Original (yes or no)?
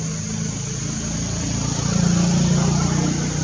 yes